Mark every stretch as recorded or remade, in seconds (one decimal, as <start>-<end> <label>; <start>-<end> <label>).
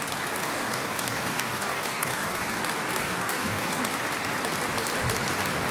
0.0-0.4 recorded; 0.4-2.6 remade; 2.6-3.0 recorded; 3.0-3.8 remade; 3.8-5.7 recorded